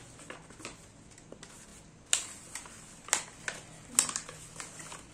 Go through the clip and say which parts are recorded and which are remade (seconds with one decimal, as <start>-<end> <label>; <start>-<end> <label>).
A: 0.0-5.1 recorded